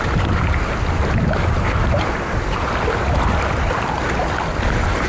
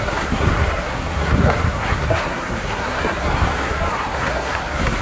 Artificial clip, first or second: second